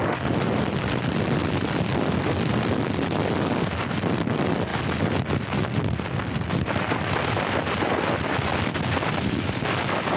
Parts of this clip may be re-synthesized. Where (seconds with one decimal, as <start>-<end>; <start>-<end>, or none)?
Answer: 0.0-4.7; 7.2-8.5; 9.1-10.2

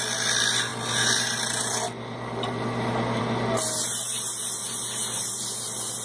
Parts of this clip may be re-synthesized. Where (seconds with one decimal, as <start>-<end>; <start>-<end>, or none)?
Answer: none

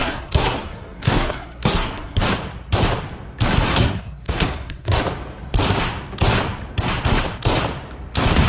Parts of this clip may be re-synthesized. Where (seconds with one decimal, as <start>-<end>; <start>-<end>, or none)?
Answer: 0.0-2.2; 3.7-5.0

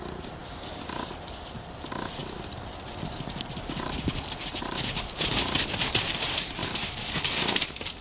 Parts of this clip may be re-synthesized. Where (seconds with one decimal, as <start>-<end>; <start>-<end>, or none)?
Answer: none

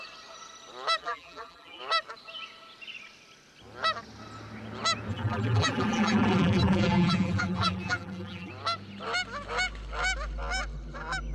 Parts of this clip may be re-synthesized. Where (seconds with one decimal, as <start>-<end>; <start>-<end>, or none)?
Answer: 1.0-1.8; 5.1-8.5

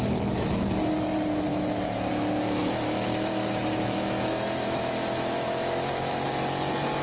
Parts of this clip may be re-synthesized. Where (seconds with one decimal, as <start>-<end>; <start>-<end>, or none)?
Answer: 1.5-2.1; 2.6-6.3

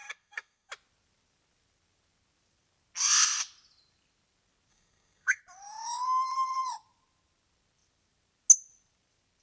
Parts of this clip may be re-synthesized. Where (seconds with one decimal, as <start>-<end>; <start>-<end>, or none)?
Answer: 0.0-0.7; 4.7-5.4

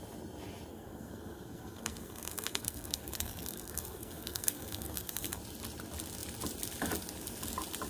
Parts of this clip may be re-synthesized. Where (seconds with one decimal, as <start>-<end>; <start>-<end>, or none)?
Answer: 0.7-5.4